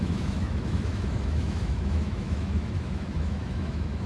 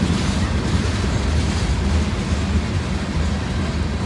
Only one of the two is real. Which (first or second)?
second